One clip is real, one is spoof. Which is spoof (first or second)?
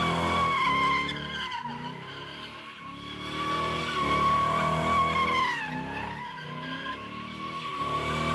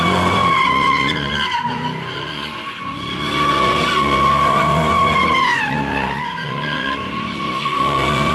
second